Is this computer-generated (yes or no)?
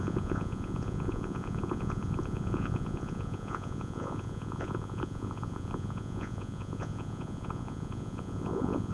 yes